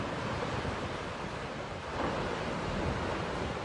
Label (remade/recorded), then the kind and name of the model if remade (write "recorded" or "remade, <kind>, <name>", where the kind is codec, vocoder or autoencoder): recorded